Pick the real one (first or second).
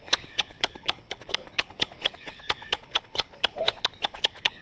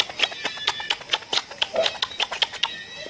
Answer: second